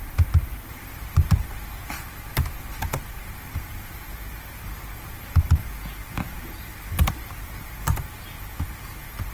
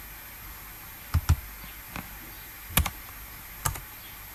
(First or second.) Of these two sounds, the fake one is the first